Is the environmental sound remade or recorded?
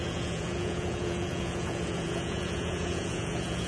remade